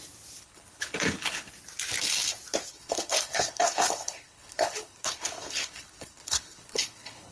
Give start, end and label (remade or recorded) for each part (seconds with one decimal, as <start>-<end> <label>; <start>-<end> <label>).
0.0-0.4 recorded; 0.4-1.5 remade; 1.5-2.7 recorded; 2.7-7.3 remade